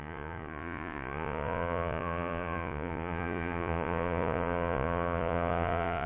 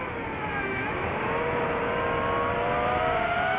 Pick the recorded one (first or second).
second